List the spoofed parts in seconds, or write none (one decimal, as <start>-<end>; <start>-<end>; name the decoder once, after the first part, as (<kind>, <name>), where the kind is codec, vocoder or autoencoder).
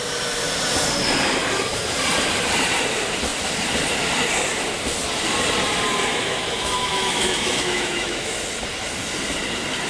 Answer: 6.1-8.4 (autoencoder, DAC-VAE)